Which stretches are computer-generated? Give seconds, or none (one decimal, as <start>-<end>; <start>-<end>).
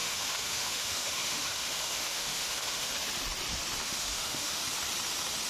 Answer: 0.0-2.9; 3.8-4.6